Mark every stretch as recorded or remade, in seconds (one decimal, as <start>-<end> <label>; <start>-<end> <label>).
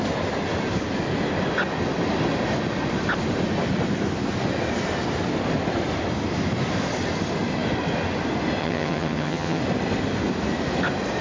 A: 0.0-8.6 recorded; 8.6-9.6 remade; 9.6-11.2 recorded